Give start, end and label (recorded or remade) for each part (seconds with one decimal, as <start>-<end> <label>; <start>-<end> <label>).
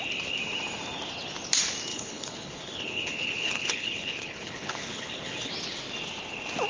0.0-1.9 recorded; 1.9-5.5 remade; 5.5-6.7 recorded